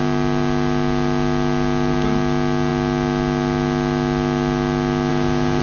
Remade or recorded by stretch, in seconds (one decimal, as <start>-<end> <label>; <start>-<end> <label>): 0.0-5.6 recorded

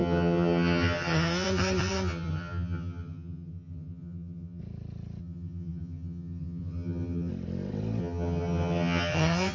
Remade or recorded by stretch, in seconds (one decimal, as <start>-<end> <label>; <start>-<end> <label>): 0.0-4.6 remade; 4.6-5.2 recorded; 5.2-7.3 remade; 7.3-8.0 recorded; 8.0-9.5 remade

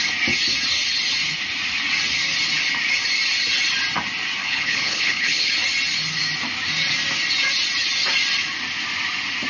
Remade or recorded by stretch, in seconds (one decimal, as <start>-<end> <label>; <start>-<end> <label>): 0.0-4.4 recorded; 4.4-5.5 remade; 5.5-9.5 recorded

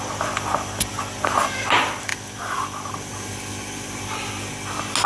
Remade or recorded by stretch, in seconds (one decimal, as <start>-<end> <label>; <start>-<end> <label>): 0.0-5.1 recorded